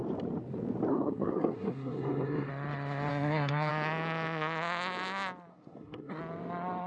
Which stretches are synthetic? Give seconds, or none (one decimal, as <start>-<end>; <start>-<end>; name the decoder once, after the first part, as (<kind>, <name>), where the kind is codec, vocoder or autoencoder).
0.9-2.5 (codec, SNAC); 3.1-3.7; 5.5-6.2